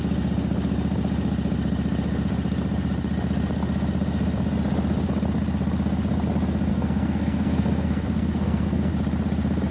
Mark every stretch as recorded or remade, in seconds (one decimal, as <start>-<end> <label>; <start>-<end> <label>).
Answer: 0.0-6.7 recorded; 6.7-8.9 remade; 8.9-9.7 recorded